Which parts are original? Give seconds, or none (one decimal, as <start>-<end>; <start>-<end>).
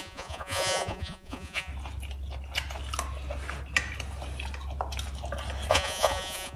1.7-5.7